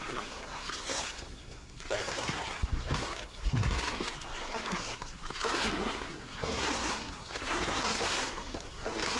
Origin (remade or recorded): remade